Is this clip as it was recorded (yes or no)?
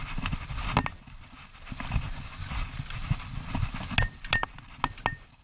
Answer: yes